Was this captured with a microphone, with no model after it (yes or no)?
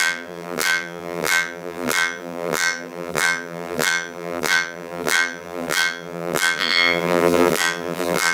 no